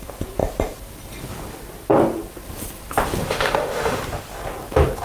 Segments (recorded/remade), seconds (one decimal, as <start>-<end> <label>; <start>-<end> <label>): 0.0-3.2 recorded; 3.2-4.0 remade; 4.0-5.0 recorded